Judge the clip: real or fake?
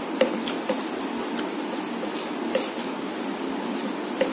real